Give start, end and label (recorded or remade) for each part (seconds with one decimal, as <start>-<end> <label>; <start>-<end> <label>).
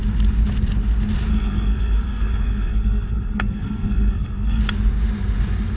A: 0.0-1.3 recorded; 1.3-4.6 remade; 4.6-5.8 recorded